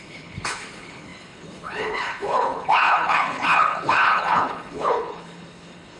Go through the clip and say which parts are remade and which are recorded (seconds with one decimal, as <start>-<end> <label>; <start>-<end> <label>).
0.0-6.0 remade